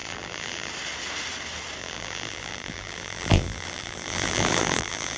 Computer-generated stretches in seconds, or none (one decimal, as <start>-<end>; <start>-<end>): 0.0-0.7; 1.8-5.2